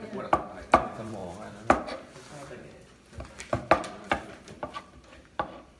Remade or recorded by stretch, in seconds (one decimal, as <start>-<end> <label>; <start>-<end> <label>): 0.0-1.2 remade; 1.2-4.3 recorded; 4.3-5.8 remade